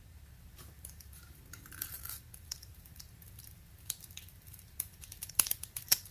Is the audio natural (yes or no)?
no